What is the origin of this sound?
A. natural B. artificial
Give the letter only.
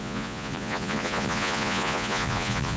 B